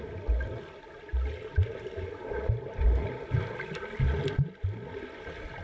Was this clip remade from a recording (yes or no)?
no